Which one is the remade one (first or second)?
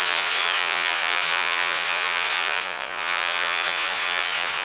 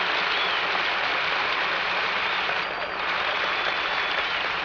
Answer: first